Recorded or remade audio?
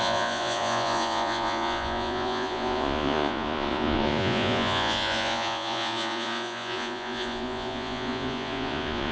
remade